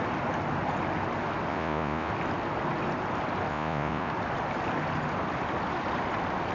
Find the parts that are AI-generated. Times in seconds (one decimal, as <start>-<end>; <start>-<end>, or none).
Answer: 1.5-2.1; 3.5-4.1